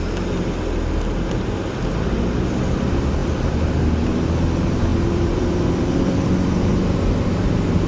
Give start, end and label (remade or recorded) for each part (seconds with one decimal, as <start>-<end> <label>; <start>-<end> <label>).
0.0-3.2 recorded; 3.2-3.8 remade; 3.8-4.9 recorded; 4.9-7.5 remade; 7.5-7.9 recorded